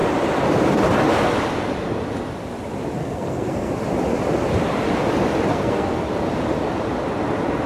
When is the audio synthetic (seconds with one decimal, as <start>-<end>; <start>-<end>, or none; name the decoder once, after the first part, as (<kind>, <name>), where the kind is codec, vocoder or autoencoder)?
3.0-3.7 (codec, SNAC); 5.5-6.1